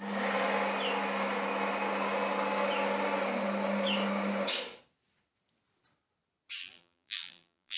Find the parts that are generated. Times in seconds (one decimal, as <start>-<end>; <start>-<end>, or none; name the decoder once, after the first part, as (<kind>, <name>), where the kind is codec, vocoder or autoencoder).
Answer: 6.6-7.8 (vocoder, BigVGAN v2)